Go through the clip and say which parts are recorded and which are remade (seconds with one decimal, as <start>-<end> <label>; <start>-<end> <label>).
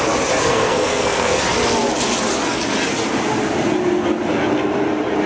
0.0-0.5 recorded; 0.5-1.4 remade; 1.4-5.3 recorded